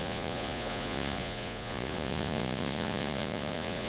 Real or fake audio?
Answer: fake